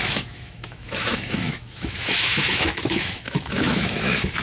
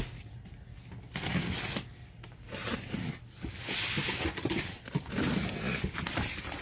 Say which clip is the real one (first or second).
second